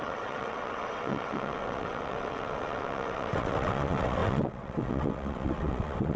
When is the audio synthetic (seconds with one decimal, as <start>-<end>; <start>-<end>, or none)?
0.0-6.2